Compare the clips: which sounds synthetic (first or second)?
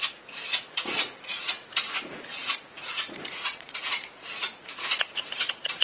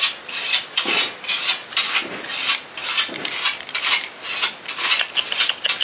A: first